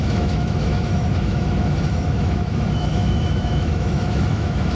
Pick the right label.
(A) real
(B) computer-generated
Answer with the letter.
B